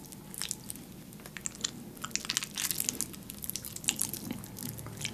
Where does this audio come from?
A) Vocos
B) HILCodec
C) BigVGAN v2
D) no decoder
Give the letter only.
D